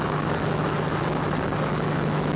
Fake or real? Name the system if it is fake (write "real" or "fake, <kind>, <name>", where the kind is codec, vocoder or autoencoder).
fake, autoencoder, DAC-VAE